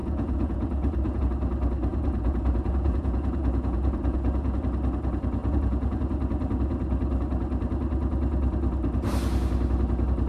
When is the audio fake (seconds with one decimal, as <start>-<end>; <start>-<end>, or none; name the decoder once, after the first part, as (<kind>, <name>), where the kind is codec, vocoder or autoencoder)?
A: 0.0-1.2 (vocoder, Vocos); 1.9-4.6; 5.4-6.0